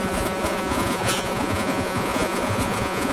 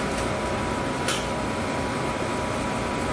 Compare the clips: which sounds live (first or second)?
second